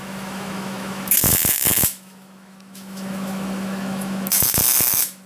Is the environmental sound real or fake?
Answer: fake